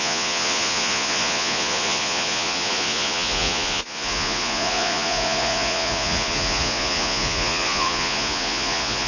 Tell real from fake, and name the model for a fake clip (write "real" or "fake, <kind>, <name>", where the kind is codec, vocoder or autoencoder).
fake, vocoder, Vocos